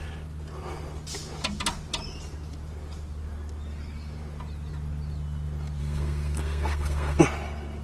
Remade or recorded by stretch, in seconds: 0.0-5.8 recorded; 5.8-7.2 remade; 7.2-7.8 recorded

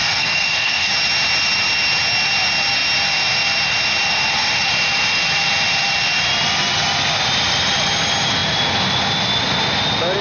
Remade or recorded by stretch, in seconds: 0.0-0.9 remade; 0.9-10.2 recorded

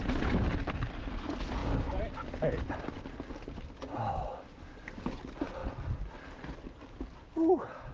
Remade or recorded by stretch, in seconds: 0.0-7.9 recorded